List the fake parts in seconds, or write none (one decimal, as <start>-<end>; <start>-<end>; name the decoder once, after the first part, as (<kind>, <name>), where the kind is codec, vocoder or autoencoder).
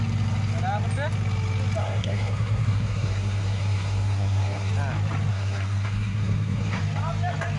1.8-4.7 (codec, SNAC); 5.3-6.8